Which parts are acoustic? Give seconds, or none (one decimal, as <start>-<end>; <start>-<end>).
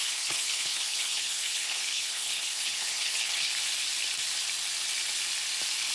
3.5-5.9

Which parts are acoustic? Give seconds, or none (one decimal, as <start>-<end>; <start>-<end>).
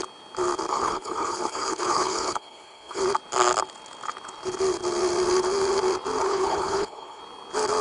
0.0-0.7; 3.0-6.2; 7.2-7.8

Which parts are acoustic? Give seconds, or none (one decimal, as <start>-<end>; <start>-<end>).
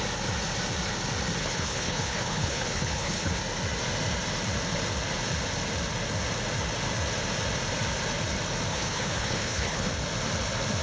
0.0-1.4; 3.4-8.7; 9.9-10.8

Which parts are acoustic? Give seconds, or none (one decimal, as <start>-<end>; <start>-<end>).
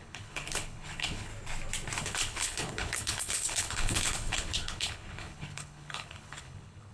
1.3-2.0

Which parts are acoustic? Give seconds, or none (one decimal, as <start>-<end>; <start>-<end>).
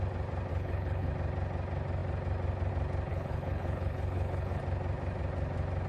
0.0-0.5; 1.1-3.1; 4.6-5.9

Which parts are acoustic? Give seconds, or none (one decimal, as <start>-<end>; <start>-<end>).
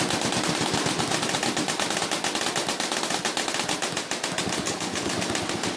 0.0-4.6; 5.1-5.8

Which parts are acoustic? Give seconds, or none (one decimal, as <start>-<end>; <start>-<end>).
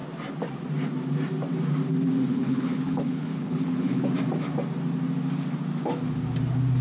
0.0-2.3; 4.0-6.8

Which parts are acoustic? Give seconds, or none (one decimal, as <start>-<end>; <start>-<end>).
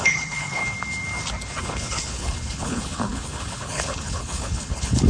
0.6-1.6